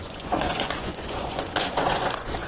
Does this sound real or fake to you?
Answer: fake